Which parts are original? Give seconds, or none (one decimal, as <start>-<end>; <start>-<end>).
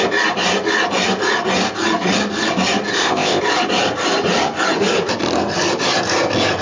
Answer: 0.0-2.9; 3.4-6.6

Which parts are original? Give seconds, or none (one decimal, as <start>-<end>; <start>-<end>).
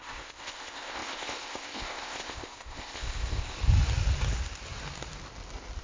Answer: 3.6-5.8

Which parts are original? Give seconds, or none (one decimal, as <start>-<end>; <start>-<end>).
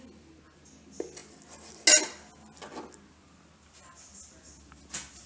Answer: 0.0-5.3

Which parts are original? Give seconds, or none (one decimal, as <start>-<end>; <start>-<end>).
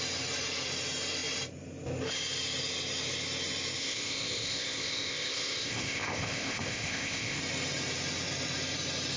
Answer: 0.0-3.8; 7.4-9.2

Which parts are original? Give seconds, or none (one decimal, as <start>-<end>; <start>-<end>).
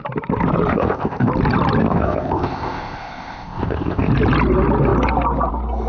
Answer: 0.0-0.7; 1.3-1.8; 4.1-5.9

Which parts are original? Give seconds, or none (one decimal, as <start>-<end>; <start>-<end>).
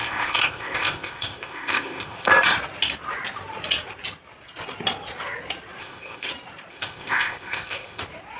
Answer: 2.3-5.8; 6.3-6.7; 8.0-8.4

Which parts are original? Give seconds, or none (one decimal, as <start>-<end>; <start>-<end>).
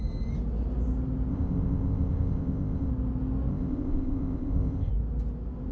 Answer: 0.0-1.3; 2.9-3.5; 4.9-5.7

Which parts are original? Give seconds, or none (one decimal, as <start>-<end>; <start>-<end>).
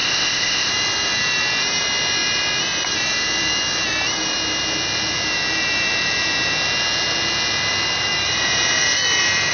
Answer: 0.7-9.5